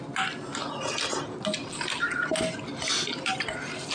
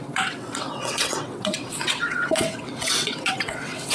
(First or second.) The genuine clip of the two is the first